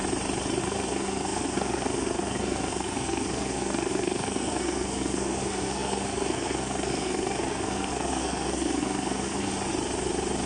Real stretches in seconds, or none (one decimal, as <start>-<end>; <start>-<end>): 0.0-0.6; 9.5-10.5